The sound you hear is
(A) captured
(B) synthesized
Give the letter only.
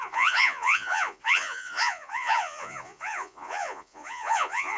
B